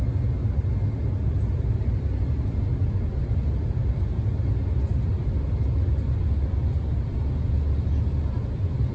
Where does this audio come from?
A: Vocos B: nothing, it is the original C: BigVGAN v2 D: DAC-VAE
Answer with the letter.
B